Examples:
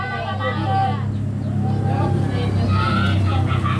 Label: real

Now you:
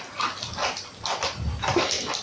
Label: real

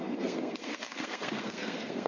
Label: fake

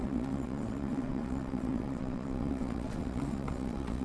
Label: fake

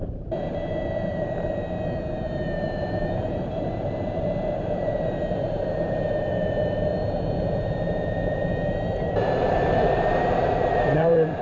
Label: fake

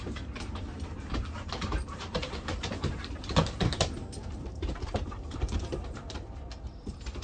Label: fake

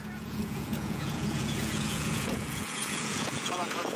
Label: fake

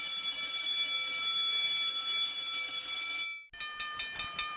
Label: real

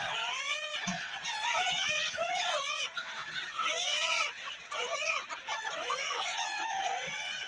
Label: fake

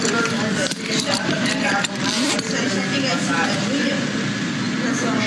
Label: real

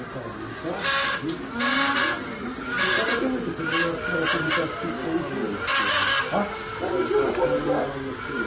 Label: real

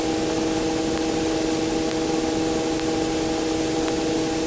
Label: real